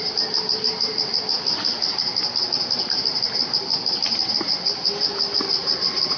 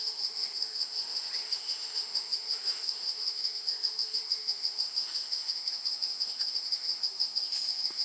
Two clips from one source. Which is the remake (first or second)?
second